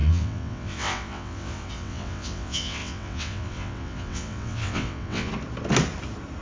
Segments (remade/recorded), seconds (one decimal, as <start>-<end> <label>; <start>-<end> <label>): 0.0-5.3 remade; 5.3-6.4 recorded